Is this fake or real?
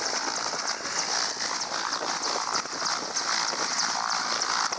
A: real